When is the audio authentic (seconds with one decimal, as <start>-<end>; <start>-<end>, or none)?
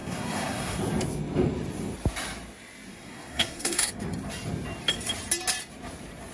0.8-2.9; 3.9-6.3